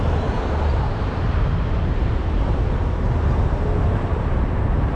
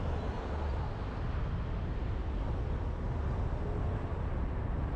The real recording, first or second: second